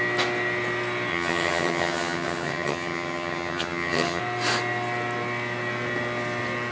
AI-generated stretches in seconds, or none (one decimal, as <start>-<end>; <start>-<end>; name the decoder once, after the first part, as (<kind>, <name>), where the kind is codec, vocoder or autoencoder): 1.1-4.2 (vocoder, HiFi-GAN)